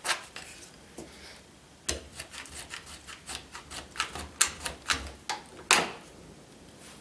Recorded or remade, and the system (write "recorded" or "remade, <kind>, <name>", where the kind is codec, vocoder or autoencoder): recorded